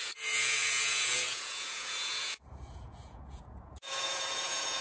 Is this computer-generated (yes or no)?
yes